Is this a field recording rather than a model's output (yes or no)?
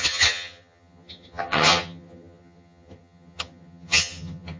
no